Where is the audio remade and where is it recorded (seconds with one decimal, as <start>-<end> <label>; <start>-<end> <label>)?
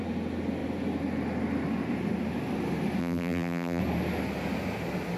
0.0-3.0 recorded; 3.0-3.8 remade; 3.8-5.2 recorded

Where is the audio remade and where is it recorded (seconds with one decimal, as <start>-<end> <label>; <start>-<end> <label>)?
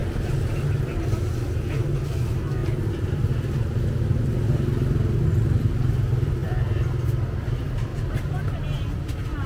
0.0-0.8 remade; 0.8-2.6 recorded; 2.6-3.3 remade; 3.3-6.4 recorded; 6.4-6.9 remade; 6.9-9.5 recorded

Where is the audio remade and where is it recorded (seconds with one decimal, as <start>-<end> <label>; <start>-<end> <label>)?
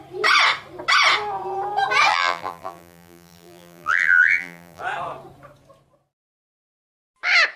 0.0-2.1 recorded; 2.1-4.8 remade; 4.8-7.6 recorded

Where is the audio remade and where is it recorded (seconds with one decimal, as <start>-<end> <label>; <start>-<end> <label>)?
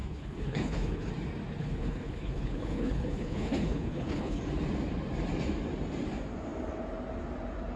0.0-1.1 remade; 1.1-1.6 recorded; 1.6-4.4 remade; 4.4-7.8 recorded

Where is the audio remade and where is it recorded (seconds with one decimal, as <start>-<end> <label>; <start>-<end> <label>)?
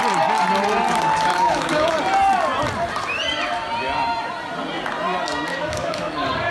0.0-1.3 recorded; 1.3-1.9 remade; 1.9-5.5 recorded; 5.5-6.5 remade